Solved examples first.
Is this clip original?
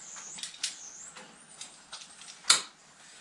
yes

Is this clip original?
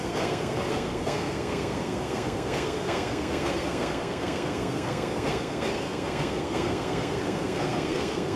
no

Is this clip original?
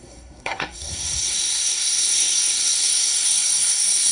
no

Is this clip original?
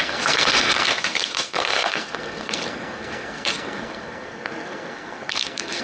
no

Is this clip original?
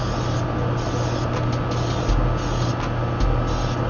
yes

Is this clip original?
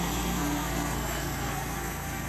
no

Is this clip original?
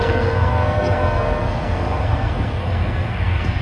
no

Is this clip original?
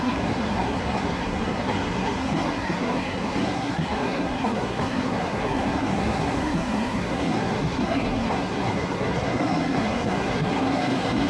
no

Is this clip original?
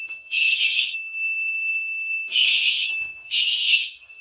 no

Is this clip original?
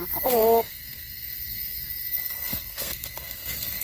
no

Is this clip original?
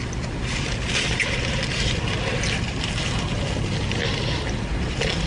yes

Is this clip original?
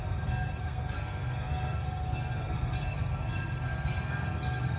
no